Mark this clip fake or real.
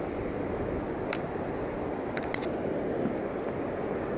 real